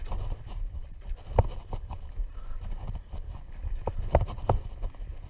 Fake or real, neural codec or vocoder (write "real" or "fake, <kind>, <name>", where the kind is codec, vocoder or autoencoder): real